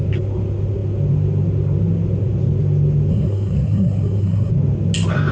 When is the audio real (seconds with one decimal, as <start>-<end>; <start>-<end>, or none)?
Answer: 0.0-3.1; 4.5-5.3